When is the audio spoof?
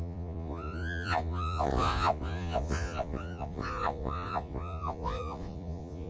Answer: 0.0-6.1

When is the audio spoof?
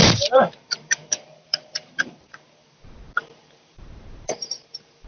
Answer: 0.0-5.1